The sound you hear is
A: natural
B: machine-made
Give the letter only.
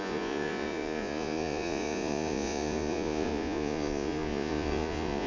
B